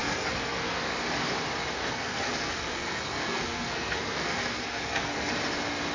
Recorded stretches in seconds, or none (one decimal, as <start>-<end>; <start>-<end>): 0.9-1.8; 5.3-5.9